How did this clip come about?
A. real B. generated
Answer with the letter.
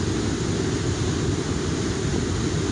A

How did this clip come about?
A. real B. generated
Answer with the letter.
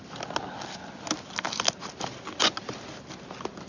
A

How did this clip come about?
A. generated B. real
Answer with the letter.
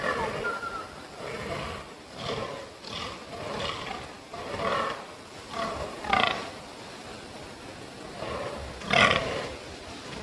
B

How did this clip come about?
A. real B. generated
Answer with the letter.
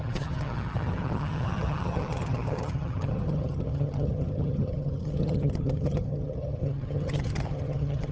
B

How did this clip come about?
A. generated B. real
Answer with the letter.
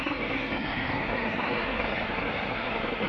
A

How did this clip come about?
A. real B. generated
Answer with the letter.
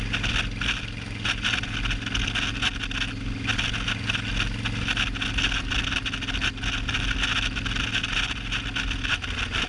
A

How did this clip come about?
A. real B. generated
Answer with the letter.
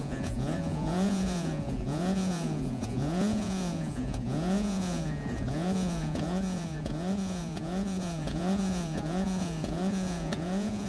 B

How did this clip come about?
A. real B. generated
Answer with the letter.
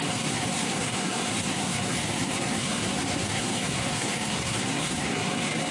B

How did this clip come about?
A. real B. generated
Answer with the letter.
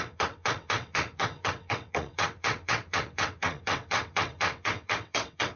B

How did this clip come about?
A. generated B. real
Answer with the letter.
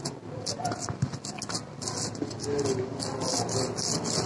B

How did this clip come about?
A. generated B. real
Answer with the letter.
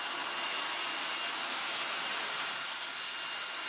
B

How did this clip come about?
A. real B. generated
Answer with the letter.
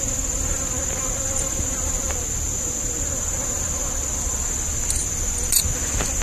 A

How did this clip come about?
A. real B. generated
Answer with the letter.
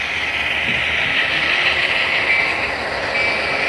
A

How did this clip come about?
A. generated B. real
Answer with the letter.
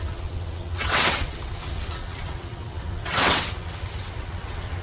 A